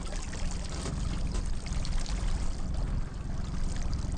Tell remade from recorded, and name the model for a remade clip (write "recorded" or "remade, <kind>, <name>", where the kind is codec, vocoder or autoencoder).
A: recorded